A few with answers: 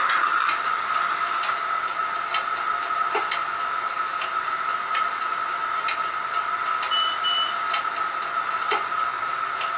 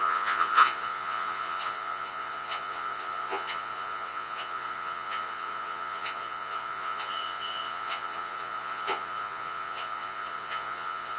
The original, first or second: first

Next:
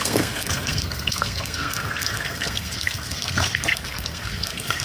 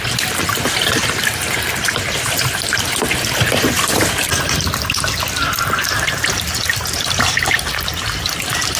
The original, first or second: second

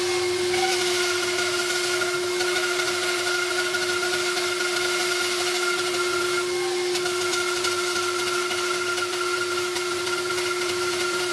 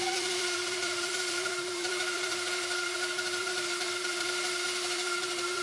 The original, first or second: first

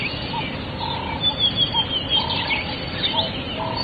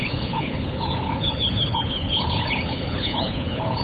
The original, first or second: first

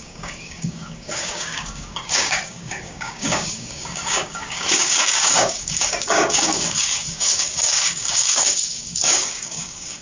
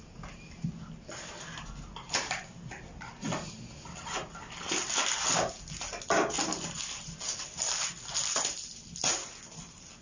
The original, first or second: second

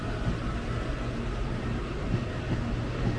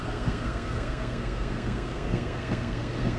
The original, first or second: first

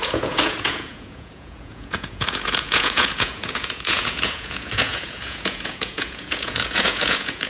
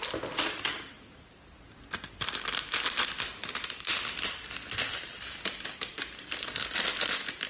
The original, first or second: second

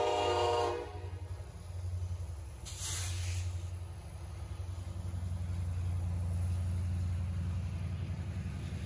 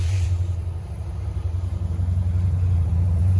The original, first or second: first